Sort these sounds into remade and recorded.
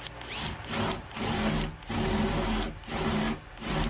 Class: recorded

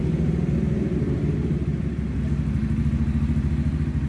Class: recorded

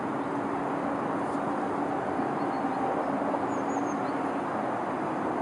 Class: recorded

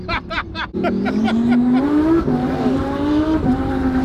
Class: remade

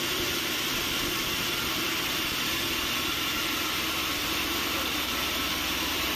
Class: remade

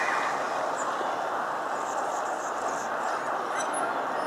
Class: recorded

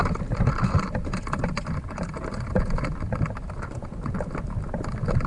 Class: remade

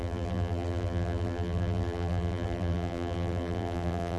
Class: remade